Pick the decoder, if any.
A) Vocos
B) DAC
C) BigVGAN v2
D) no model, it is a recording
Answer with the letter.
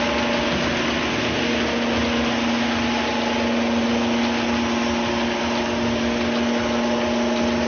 D